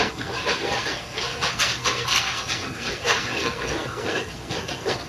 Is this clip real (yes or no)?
no